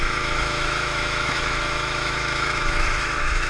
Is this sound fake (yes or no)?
yes